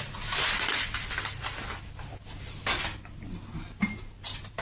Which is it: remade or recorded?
recorded